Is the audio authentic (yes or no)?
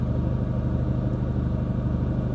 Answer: yes